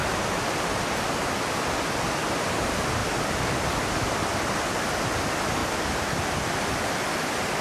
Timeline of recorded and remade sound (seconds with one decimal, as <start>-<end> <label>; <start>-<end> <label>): 0.0-0.8 remade; 0.8-5.6 recorded; 5.6-6.1 remade; 6.1-7.6 recorded